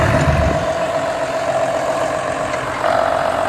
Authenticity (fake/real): real